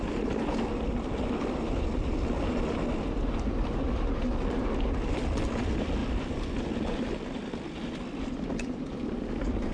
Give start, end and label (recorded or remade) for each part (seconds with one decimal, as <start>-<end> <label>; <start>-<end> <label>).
0.0-9.7 recorded